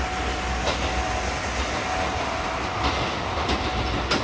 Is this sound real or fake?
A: real